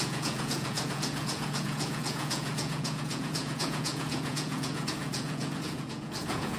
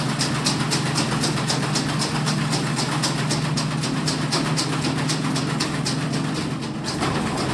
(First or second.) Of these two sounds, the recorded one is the second